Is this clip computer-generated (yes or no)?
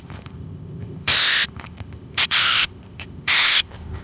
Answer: yes